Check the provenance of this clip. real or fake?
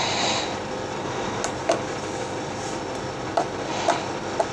real